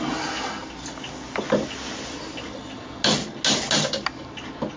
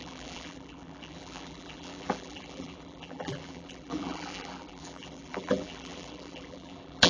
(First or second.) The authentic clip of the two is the first